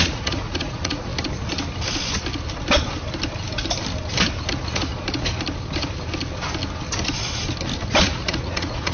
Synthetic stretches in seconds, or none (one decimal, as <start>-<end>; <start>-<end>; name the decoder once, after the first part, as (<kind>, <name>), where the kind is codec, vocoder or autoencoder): 0.0-1.1 (vocoder, Vocos); 4.5-4.9; 8.0-8.9